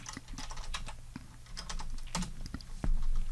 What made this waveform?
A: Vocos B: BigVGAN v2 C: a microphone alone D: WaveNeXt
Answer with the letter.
C